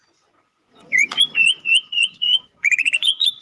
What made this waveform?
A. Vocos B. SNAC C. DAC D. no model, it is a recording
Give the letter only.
A